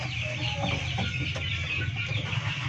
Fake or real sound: real